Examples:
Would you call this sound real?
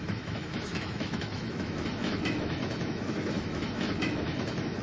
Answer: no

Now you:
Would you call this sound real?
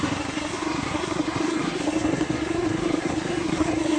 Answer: no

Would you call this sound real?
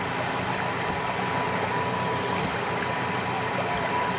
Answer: yes